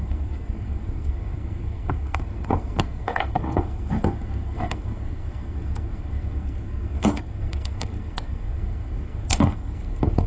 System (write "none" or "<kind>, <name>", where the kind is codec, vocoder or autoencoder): codec, SNAC